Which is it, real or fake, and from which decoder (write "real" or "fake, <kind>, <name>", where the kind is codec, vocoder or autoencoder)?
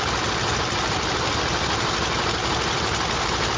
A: real